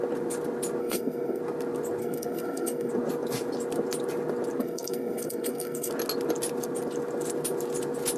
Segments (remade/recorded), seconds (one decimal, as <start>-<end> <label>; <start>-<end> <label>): 0.0-0.8 recorded; 0.8-1.4 remade; 1.4-2.0 recorded; 2.0-2.9 remade; 2.9-4.6 recorded; 4.6-5.9 remade; 5.9-8.2 recorded